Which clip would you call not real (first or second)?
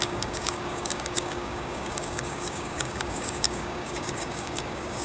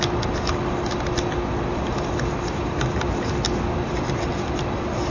first